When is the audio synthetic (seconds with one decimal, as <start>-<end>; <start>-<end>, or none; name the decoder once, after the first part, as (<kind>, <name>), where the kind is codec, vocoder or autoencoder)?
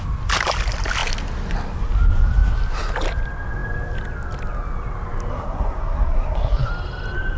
5.3-6.7 (codec, SNAC)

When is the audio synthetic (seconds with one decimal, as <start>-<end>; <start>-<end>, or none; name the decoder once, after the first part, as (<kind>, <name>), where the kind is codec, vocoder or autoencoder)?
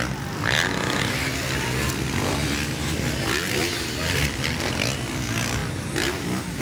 none